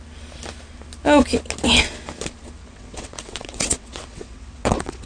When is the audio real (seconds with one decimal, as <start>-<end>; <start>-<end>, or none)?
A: 0.0-2.6